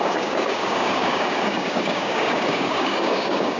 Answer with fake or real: fake